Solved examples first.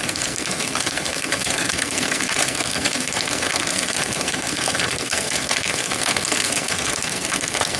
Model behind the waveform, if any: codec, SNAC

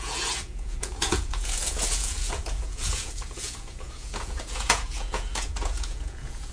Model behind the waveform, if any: vocoder, Vocos